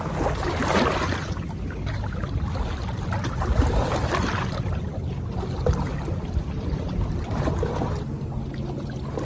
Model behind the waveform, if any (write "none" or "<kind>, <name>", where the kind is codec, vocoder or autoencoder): none